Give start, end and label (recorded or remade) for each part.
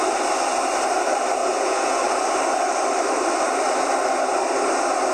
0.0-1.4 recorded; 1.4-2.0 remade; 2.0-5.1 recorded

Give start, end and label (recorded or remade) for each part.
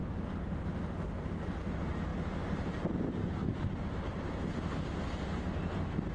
0.0-0.8 remade; 0.8-3.4 recorded; 3.4-4.6 remade; 4.6-6.1 recorded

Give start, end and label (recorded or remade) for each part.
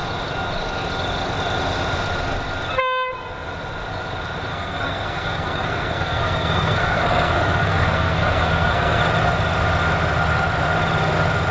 0.0-4.5 recorded; 4.5-9.0 remade; 9.0-11.5 recorded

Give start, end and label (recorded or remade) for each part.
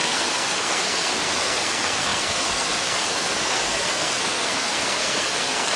0.0-5.8 remade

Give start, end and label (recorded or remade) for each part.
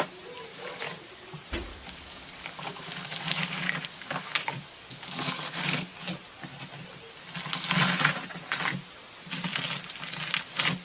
0.0-0.5 recorded; 0.5-1.1 remade; 1.1-1.7 recorded; 1.7-5.9 remade; 5.9-10.8 recorded